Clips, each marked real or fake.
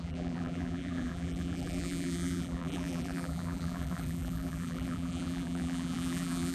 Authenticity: fake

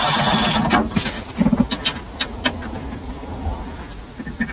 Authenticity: real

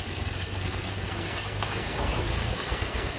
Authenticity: fake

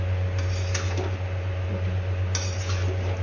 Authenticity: real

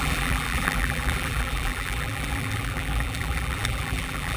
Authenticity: fake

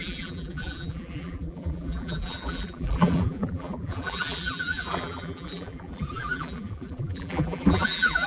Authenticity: fake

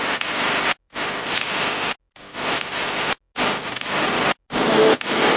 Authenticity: real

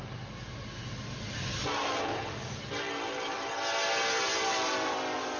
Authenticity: real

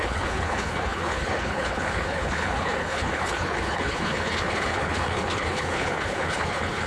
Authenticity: fake